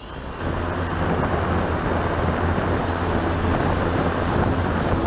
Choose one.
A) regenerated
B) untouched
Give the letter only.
B